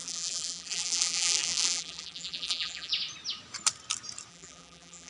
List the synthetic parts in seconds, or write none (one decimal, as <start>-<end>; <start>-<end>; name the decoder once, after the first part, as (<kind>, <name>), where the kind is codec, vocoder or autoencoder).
0.0-2.9 (vocoder, BigVGAN v2); 4.3-5.1